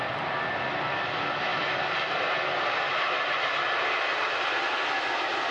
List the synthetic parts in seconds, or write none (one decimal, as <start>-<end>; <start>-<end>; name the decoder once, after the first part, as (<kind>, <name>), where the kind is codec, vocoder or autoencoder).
1.5-4.8 (vocoder, BigVGAN v2)